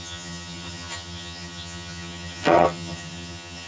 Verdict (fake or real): fake